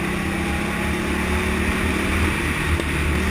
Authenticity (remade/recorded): recorded